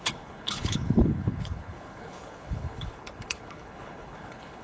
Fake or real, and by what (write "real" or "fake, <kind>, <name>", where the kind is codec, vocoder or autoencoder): fake, codec, HILCodec